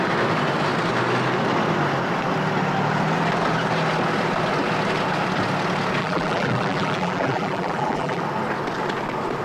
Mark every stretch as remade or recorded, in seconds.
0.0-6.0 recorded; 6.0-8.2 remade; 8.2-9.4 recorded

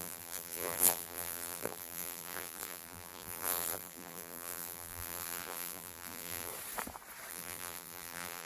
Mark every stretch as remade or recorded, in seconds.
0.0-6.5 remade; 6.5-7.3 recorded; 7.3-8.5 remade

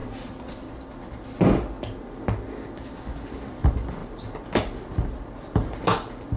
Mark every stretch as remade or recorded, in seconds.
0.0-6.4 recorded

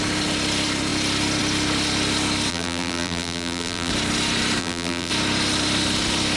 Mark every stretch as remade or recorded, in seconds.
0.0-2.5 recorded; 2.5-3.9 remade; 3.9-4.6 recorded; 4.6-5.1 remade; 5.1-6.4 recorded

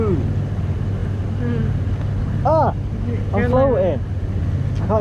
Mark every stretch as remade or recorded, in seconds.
0.0-5.0 recorded